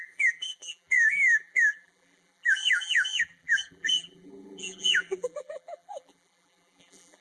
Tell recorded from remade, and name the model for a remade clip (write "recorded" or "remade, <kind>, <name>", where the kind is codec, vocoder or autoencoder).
remade, vocoder, BigVGAN v2